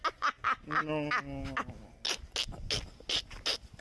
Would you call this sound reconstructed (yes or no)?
no